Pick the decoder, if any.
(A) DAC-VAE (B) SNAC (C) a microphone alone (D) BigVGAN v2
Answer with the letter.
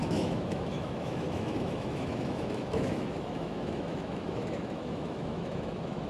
A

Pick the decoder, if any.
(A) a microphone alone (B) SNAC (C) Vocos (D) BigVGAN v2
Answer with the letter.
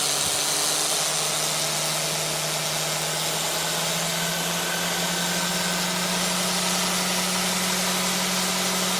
A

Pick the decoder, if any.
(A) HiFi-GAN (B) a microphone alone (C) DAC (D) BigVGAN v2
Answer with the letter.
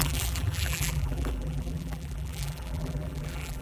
D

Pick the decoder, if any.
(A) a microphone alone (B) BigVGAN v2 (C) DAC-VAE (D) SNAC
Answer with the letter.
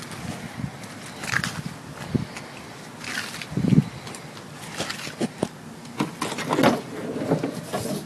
A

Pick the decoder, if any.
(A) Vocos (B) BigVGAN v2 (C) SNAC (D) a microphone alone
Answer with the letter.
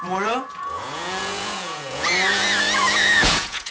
A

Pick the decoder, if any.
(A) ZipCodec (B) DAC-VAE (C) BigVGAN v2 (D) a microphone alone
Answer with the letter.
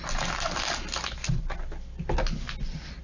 D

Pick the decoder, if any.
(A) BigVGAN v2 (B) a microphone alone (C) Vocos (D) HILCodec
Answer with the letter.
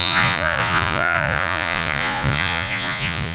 C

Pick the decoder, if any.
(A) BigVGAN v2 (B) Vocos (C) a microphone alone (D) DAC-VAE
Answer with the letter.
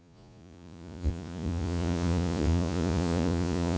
B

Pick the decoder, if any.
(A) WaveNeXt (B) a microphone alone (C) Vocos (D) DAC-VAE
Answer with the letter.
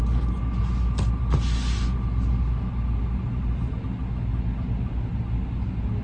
B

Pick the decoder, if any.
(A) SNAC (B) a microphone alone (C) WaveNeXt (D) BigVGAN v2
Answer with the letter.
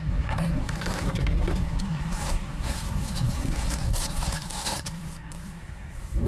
A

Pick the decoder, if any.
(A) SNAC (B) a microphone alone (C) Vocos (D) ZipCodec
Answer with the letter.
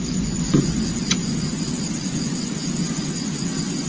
C